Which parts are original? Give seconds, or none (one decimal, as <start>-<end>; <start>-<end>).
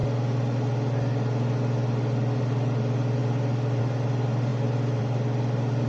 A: 0.0-5.9